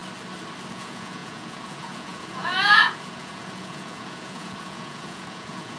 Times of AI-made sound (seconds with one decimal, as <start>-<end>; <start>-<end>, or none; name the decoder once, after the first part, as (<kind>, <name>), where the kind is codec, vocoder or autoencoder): 0.7-5.8 (vocoder, Vocos)